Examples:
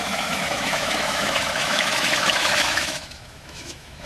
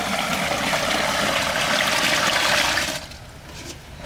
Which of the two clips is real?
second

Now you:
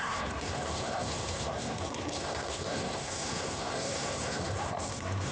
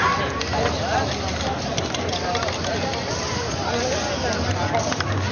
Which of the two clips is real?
second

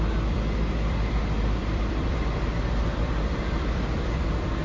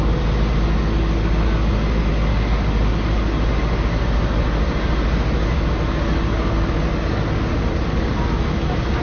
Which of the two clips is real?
second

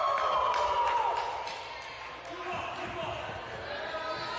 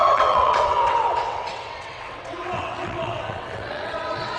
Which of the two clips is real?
first